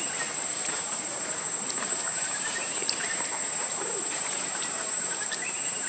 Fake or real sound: fake